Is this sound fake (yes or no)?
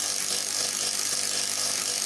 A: no